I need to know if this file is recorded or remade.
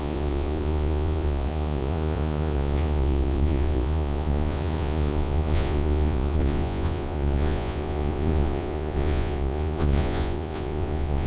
remade